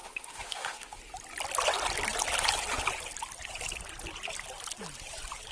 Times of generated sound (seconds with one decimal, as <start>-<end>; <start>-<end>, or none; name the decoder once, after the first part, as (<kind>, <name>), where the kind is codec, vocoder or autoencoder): 0.0-1.0 (autoencoder, DAC-VAE)